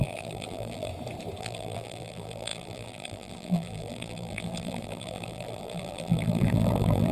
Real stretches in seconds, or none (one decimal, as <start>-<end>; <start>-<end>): 0.9-1.4